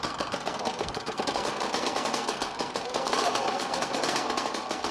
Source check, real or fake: fake